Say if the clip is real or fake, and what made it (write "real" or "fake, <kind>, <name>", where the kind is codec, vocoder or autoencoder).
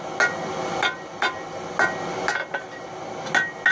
real